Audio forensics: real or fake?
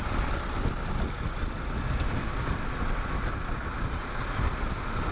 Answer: real